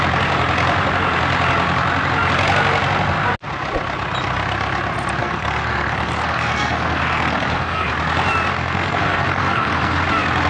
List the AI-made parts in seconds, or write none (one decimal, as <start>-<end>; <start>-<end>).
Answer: 5.2-7.9; 8.5-10.0